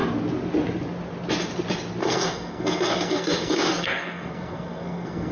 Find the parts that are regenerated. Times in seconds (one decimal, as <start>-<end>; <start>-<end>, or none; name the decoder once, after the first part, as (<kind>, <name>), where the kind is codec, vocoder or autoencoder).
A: 2.0-5.3 (codec, SNAC)

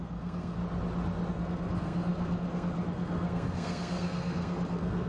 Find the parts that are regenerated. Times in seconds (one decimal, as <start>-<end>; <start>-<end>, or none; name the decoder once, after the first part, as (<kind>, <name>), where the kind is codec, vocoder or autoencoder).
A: 0.0-0.6 (codec, SNAC); 1.3-5.1